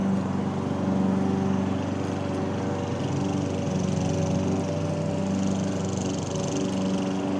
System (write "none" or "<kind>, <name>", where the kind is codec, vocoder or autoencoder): none